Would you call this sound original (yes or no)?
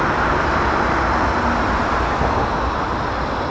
yes